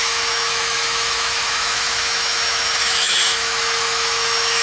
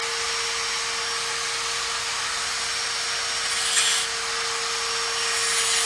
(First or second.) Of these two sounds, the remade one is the first